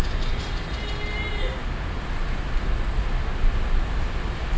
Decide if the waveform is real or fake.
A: real